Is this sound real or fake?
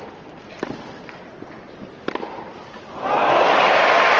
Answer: real